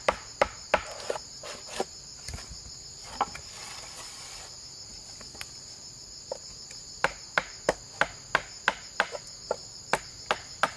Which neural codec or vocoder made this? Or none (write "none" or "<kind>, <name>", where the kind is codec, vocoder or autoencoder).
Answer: none